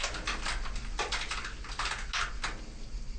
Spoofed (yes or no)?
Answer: no